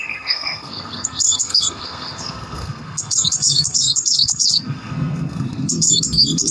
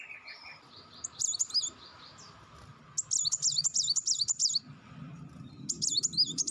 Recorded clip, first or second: second